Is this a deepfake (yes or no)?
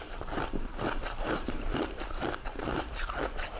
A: yes